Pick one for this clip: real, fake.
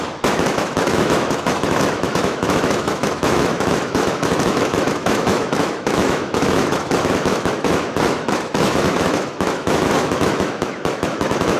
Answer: fake